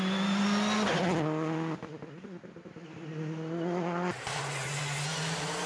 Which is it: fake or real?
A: real